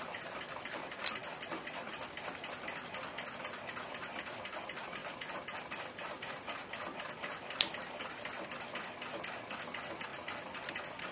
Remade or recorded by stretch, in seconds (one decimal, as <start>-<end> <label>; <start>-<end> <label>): 0.0-11.1 recorded